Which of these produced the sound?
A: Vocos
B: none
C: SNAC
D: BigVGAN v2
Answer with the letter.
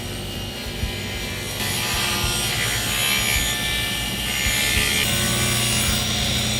B